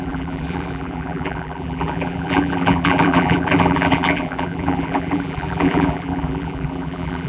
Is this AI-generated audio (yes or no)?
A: yes